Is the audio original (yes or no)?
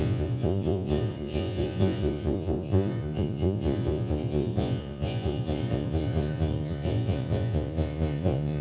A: no